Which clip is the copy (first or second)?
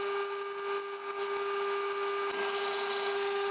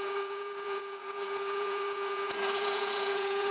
second